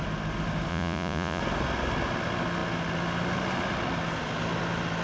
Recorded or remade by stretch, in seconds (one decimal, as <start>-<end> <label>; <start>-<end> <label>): 0.0-0.7 recorded; 0.7-1.4 remade; 1.4-5.0 recorded